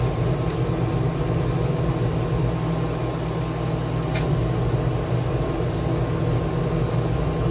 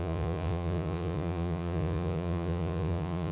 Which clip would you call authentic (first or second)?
first